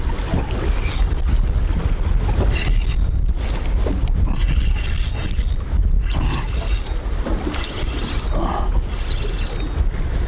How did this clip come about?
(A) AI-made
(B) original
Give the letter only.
B